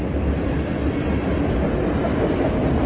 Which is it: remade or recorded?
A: recorded